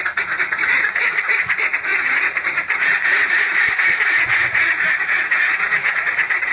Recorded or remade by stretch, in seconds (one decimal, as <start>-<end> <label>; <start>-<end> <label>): 0.0-6.5 remade